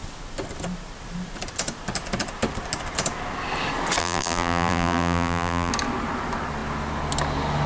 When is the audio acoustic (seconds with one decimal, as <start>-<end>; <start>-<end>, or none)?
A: 0.0-4.0; 5.7-7.7